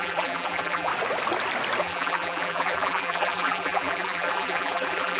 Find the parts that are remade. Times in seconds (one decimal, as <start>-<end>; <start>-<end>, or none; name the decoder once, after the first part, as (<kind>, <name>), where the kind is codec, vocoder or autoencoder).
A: 0.0-0.9 (vocoder, BigVGAN v2); 1.8-5.2